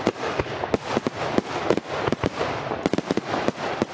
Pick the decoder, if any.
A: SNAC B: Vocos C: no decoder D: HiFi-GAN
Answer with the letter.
C